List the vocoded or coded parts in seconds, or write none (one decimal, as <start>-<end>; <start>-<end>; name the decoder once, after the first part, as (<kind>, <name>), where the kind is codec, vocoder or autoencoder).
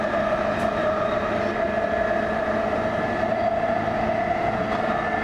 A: 0.8-2.0 (vocoder, BigVGAN v2)